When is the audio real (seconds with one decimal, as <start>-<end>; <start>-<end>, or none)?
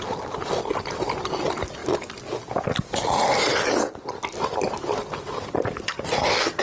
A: 0.0-6.6